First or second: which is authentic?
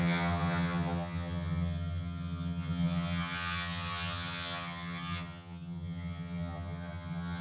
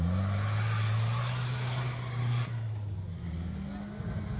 second